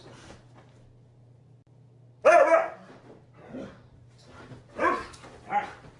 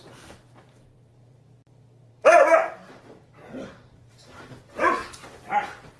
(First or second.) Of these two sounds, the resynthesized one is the second